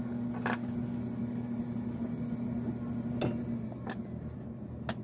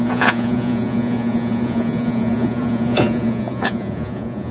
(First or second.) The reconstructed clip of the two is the second